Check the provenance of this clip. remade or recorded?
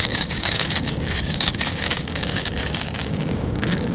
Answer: remade